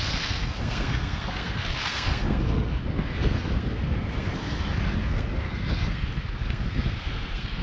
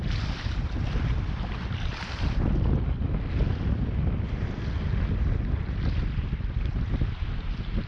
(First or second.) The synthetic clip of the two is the first